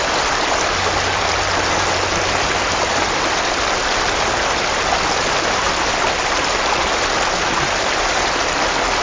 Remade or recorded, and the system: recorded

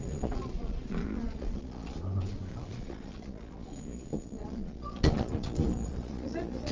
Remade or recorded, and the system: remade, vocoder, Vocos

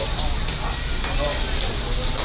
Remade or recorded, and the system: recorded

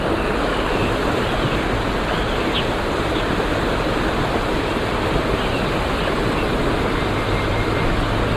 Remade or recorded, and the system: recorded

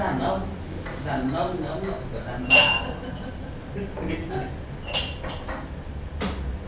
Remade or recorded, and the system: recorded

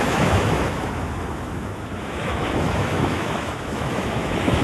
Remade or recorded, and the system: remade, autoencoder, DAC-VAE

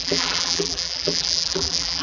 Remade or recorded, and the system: remade, vocoder, BigVGAN v2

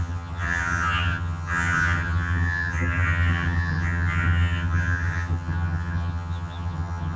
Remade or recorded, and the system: remade, vocoder, HiFi-GAN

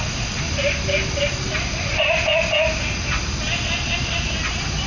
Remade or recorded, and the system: recorded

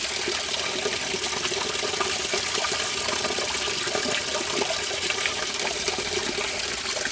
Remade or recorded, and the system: recorded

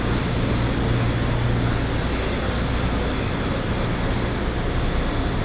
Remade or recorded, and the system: recorded